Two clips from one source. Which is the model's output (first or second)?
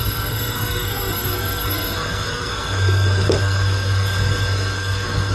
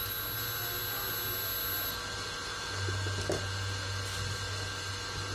first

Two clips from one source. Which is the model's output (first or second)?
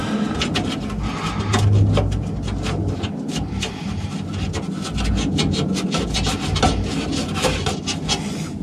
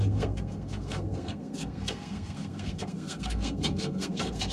second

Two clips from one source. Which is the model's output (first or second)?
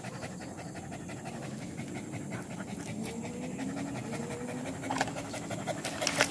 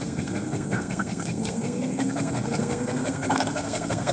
second